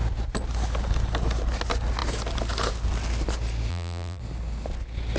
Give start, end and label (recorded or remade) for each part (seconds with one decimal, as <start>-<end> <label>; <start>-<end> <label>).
0.0-3.7 recorded; 3.7-4.2 remade; 4.2-5.2 recorded